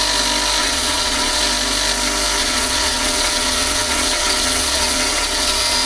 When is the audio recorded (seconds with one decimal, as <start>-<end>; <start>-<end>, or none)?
0.0-0.6; 1.4-2.4